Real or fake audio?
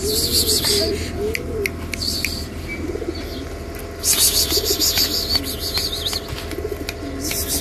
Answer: real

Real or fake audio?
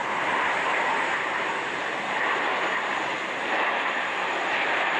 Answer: fake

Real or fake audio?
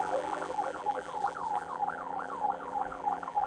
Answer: fake